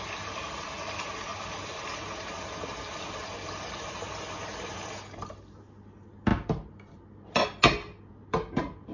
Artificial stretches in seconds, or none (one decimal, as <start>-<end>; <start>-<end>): none